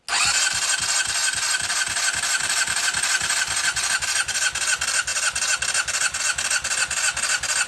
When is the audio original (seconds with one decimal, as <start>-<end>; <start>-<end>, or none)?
0.0-1.2; 4.0-7.7